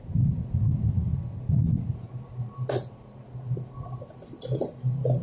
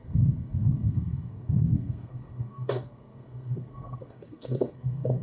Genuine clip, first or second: first